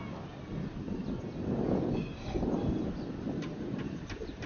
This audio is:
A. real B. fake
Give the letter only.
A